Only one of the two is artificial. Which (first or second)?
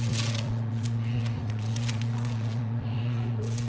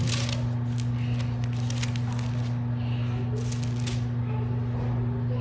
first